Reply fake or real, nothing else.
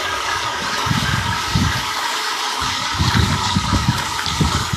fake